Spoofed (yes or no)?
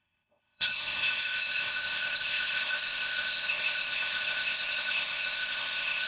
yes